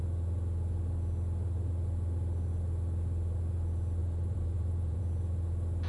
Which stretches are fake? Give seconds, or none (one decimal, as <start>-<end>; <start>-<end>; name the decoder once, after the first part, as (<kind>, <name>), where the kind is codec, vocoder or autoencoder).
4.0-5.0 (vocoder, BigVGAN v2)